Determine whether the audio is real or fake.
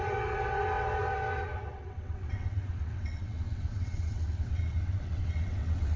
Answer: fake